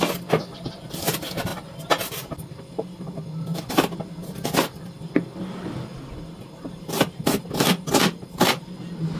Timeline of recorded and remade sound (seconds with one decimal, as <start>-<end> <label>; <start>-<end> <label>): 0.0-9.2 recorded